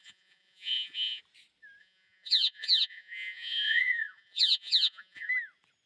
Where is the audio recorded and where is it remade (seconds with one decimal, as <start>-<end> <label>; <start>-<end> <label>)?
0.0-1.2 remade; 1.2-1.8 recorded; 1.8-5.3 remade; 5.3-5.9 recorded